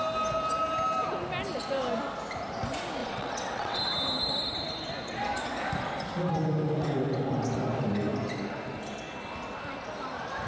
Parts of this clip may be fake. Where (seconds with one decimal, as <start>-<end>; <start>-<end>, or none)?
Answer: 3.0-3.8